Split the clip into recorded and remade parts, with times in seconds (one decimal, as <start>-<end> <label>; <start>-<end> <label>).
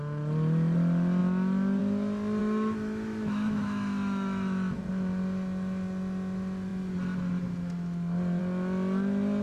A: 0.0-2.4 recorded; 2.4-4.8 remade; 4.8-9.4 recorded